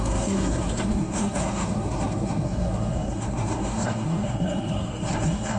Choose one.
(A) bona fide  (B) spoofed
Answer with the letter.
B